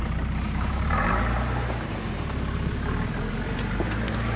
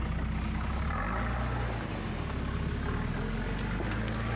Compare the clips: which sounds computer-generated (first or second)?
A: first